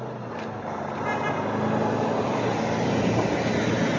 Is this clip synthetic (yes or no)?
no